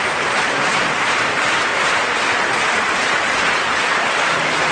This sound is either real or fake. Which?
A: fake